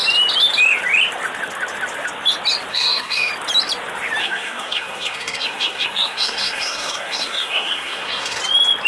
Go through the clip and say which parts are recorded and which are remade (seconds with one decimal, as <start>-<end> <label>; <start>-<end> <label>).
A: 0.0-2.7 recorded; 2.7-3.3 remade; 3.3-4.2 recorded; 4.2-8.4 remade; 8.4-8.9 recorded